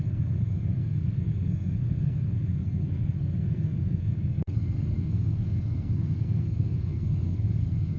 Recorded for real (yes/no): no